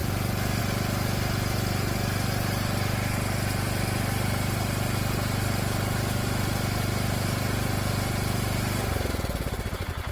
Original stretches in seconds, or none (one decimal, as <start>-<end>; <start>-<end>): 0.0-10.1